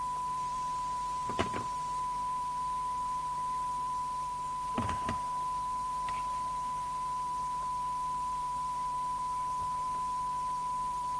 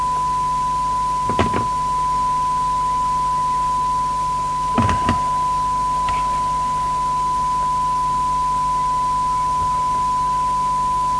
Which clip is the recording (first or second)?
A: second